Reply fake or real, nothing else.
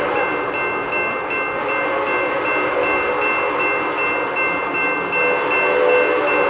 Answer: real